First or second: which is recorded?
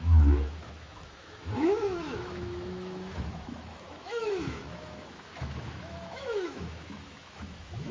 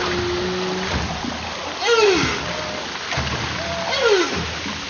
second